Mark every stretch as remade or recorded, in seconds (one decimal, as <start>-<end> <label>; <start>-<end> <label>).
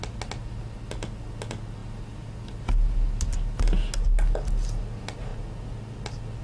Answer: 0.0-6.4 recorded